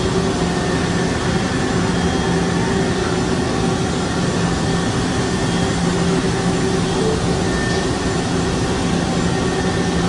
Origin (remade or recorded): recorded